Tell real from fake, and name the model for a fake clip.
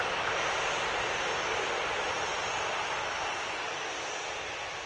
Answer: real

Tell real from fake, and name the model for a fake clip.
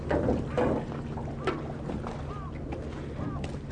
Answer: real